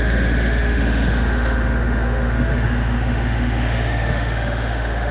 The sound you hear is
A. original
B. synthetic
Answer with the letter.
B